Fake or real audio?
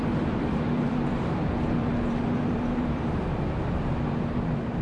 fake